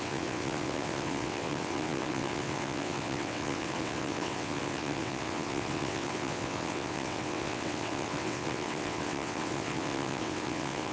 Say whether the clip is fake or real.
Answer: fake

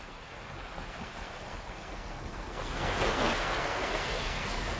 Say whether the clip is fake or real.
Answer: fake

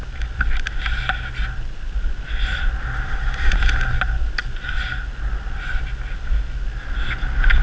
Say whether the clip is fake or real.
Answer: real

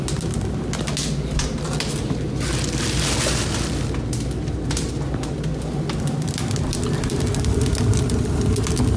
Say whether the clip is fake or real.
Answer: real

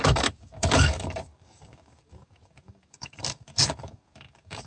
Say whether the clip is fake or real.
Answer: fake